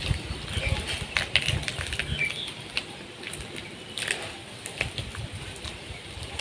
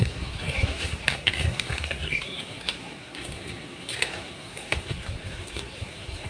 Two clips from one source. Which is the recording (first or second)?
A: first